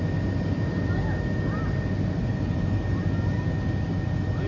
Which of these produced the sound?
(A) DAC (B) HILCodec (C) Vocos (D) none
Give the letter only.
D